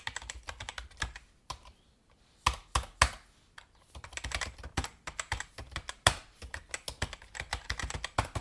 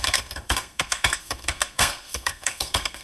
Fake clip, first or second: second